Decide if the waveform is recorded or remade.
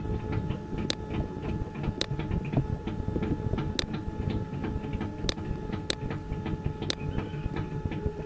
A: recorded